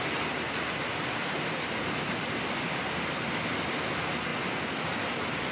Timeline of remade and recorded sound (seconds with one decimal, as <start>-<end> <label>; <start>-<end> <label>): 0.0-5.5 recorded

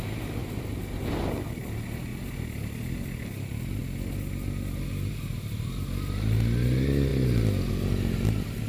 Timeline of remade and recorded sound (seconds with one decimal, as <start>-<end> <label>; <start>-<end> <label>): 0.0-0.4 recorded; 0.4-1.0 remade; 1.0-8.7 recorded

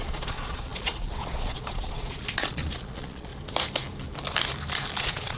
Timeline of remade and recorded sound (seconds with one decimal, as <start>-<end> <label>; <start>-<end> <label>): 0.0-3.3 remade; 3.3-5.0 recorded; 5.0-5.4 remade

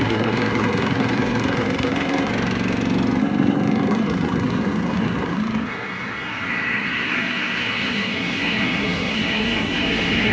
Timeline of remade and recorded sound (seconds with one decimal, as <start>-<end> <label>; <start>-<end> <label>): 0.0-2.3 remade; 2.3-3.2 recorded; 3.2-10.3 remade

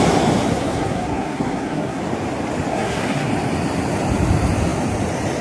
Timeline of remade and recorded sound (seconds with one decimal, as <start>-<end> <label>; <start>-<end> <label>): 0.0-0.5 recorded; 0.5-2.0 remade; 2.0-2.7 recorded; 2.7-3.3 remade; 3.3-5.4 recorded

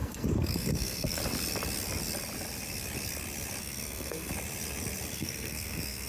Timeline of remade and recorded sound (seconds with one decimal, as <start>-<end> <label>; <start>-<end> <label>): 0.0-1.2 remade; 1.2-3.6 recorded; 3.6-4.3 remade; 4.3-5.1 recorded; 5.1-6.1 remade